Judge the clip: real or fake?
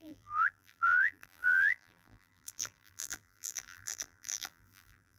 fake